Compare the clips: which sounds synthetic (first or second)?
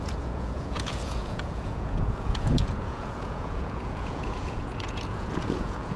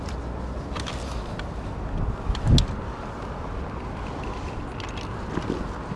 first